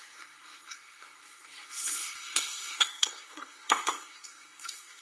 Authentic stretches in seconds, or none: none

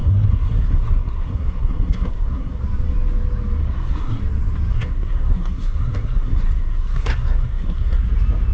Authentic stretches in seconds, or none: 2.6-3.6; 4.2-4.7; 8.0-8.5